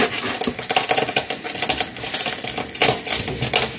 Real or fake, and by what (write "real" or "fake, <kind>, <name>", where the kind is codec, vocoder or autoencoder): real